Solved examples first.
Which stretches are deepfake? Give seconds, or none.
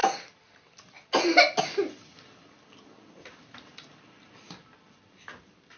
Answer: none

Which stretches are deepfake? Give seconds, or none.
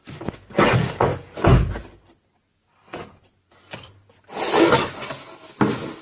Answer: none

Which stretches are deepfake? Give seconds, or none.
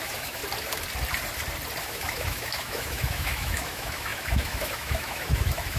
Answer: 0.0-0.4 (autoencoder, DAC-VAE); 1.8-5.8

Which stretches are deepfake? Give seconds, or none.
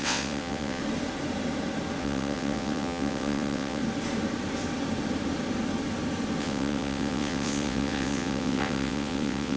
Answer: 0.0-0.8 (vocoder, WaveNeXt); 2.0-3.8; 6.4-9.6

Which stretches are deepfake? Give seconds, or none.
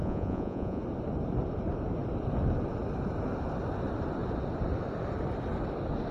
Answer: 0.0-0.8 (vocoder, Vocos)